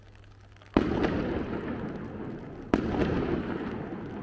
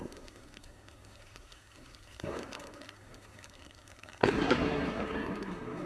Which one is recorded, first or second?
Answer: first